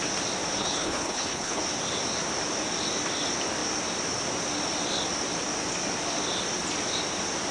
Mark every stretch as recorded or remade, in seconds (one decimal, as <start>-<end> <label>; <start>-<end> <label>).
0.0-0.6 recorded; 0.6-1.6 remade; 1.6-7.5 recorded

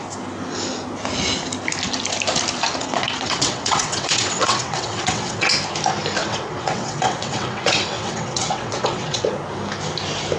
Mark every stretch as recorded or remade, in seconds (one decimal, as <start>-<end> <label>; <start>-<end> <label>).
0.0-2.8 recorded; 2.8-5.5 remade; 5.5-6.2 recorded; 6.2-9.3 remade; 9.3-10.4 recorded

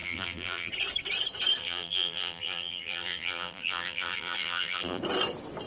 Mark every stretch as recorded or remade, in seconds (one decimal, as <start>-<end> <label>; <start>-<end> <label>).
0.0-0.7 remade; 0.7-1.6 recorded; 1.6-5.0 remade; 5.0-5.7 recorded